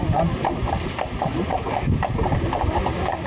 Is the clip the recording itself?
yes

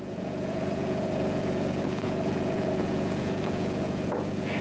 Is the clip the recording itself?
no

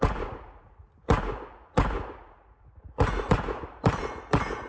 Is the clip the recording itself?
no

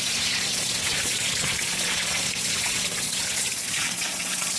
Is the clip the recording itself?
no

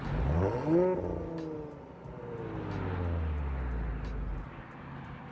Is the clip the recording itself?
yes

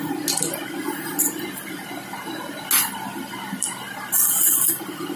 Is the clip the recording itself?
yes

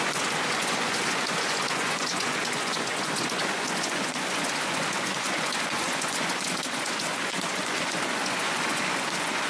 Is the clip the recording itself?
no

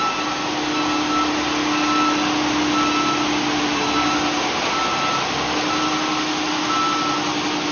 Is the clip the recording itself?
yes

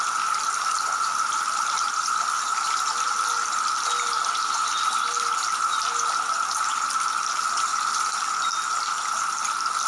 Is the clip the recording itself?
yes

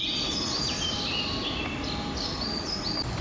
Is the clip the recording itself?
yes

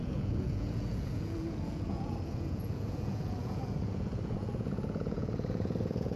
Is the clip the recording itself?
no